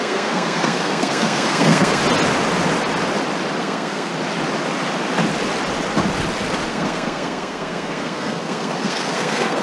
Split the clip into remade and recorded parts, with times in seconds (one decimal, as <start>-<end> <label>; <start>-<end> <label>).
0.0-2.0 remade; 2.0-3.6 recorded; 3.6-4.1 remade; 4.1-6.7 recorded; 6.7-9.6 remade